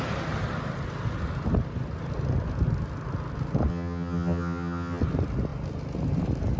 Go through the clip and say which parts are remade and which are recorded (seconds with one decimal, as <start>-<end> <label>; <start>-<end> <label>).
0.0-3.7 recorded; 3.7-5.0 remade; 5.0-6.6 recorded